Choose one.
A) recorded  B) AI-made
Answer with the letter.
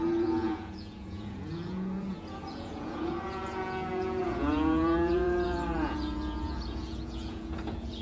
B